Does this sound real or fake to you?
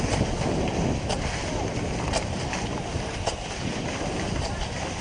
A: real